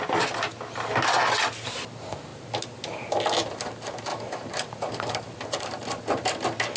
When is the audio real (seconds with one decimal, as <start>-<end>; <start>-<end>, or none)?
0.0-6.8